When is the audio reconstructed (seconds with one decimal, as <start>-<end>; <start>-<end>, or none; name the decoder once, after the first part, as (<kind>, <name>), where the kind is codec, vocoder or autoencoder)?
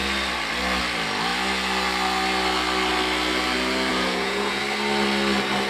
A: 3.9-4.6 (vocoder, Vocos)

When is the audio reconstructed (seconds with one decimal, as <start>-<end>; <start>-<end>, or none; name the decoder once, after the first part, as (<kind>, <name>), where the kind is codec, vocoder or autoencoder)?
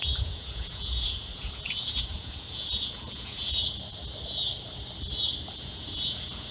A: 0.0-3.6 (vocoder, Vocos); 5.5-6.5